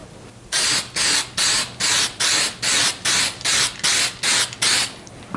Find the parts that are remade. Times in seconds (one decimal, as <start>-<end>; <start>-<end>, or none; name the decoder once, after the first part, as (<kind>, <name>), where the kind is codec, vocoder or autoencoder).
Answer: 0.0-1.5 (vocoder, BigVGAN v2); 2.8-4.0